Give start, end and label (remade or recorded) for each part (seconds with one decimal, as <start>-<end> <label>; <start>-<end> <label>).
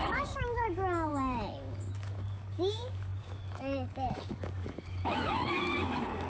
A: 0.0-6.3 remade